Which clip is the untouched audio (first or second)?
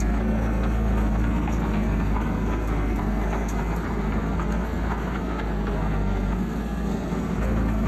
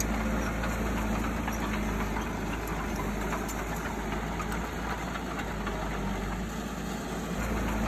second